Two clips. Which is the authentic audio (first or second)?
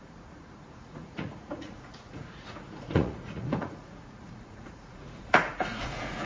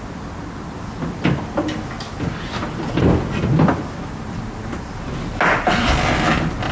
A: second